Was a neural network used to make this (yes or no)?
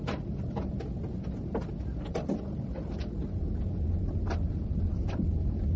no